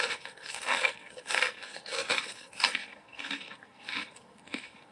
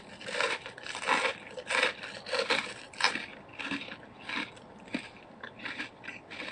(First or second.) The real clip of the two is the second